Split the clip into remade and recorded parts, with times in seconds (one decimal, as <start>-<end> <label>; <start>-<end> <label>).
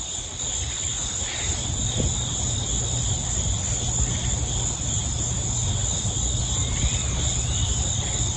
0.0-8.4 recorded